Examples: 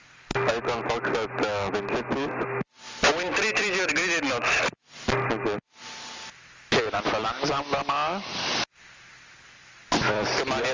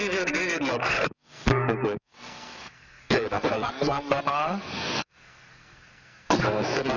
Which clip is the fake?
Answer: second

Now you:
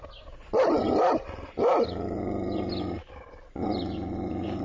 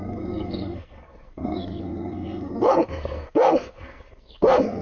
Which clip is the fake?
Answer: second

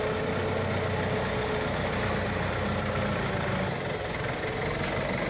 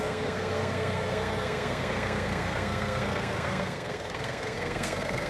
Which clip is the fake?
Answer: second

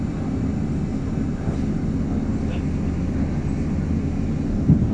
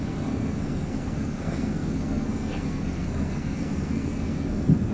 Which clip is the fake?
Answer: second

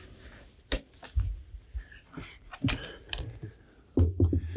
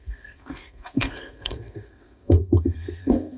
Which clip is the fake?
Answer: second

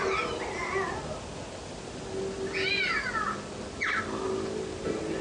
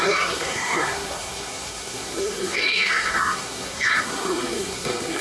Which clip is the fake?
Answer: second